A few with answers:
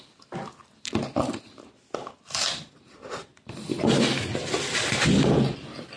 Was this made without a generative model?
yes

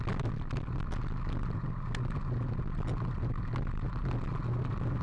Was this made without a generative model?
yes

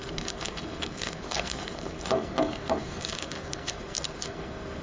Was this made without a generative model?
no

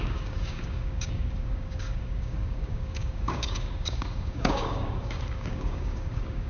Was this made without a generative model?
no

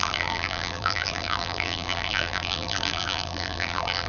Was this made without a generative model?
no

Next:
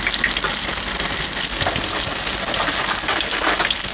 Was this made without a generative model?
yes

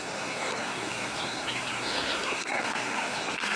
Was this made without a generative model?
no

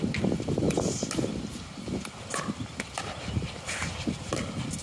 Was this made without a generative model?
yes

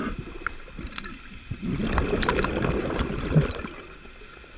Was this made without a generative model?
yes